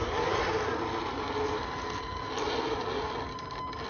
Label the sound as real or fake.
real